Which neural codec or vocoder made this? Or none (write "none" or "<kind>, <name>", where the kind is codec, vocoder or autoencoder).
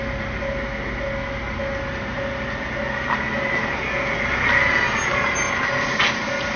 none